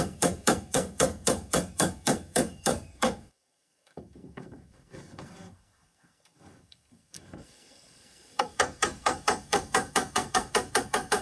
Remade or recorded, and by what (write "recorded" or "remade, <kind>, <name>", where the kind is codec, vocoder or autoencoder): remade, codec, SNAC